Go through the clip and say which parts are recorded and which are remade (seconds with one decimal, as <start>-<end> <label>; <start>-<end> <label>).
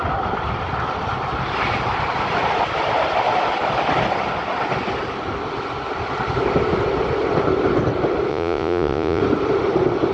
0.0-8.3 recorded; 8.3-9.2 remade; 9.2-10.1 recorded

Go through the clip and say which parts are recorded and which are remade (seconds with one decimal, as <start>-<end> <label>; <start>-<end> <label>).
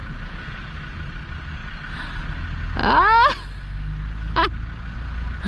0.0-0.7 remade; 0.7-5.5 recorded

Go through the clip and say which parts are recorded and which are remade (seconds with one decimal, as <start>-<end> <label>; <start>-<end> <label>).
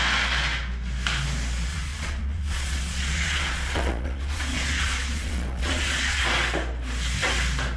0.0-1.7 recorded; 1.7-6.2 remade; 6.2-7.8 recorded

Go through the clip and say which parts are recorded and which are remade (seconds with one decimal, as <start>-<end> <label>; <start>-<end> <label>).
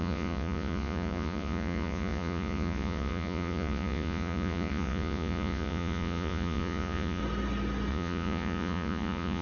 0.0-7.2 remade; 7.2-7.9 recorded; 7.9-9.4 remade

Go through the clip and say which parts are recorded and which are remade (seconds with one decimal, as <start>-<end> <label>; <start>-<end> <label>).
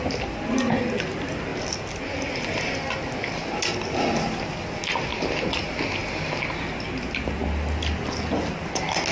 0.0-9.1 recorded